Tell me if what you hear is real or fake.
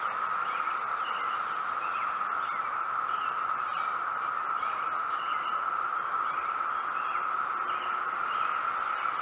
real